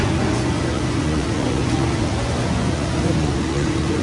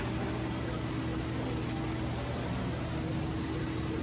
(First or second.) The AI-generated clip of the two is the first